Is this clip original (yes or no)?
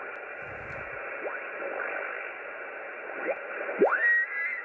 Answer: yes